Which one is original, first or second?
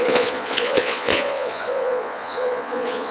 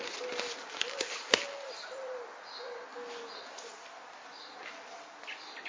second